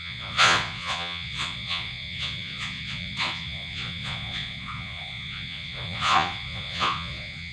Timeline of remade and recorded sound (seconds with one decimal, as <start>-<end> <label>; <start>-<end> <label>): 0.0-7.5 remade